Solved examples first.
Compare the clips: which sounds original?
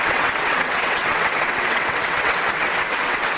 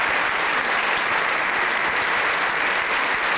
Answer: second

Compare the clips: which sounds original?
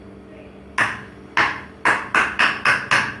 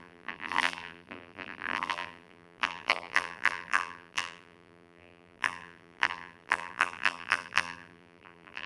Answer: first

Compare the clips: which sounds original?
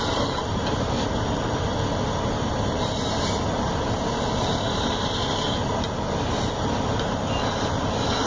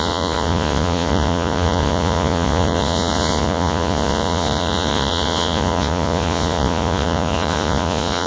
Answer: first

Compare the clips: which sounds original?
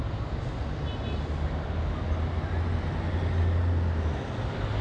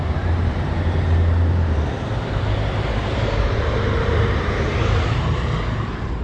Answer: first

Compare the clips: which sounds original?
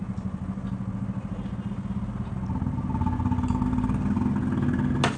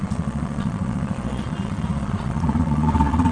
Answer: first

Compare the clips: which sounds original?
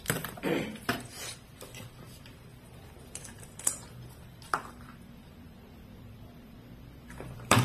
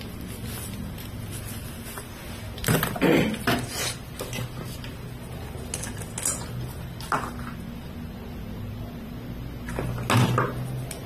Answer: second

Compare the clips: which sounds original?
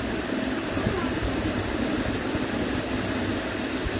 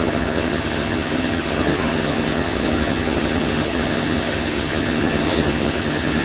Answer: first